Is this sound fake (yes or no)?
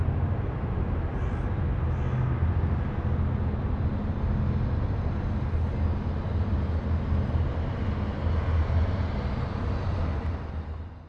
no